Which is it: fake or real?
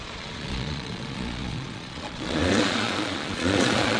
fake